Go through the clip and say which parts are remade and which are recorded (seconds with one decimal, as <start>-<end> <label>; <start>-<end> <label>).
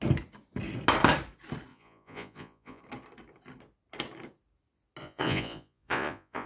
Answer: 0.0-1.7 recorded; 1.7-2.8 remade; 2.8-5.0 recorded; 5.0-6.5 remade